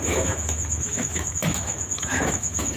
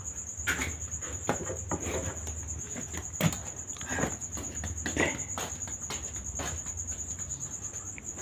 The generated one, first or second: first